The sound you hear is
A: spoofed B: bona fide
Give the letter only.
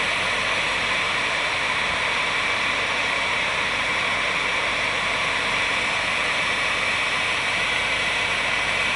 A